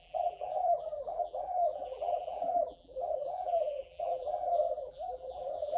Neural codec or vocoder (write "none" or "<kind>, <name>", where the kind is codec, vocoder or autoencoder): vocoder, BigVGAN v2